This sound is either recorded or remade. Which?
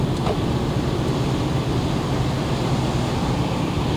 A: recorded